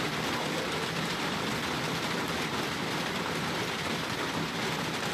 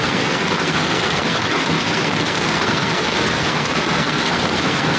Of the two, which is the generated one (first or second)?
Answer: second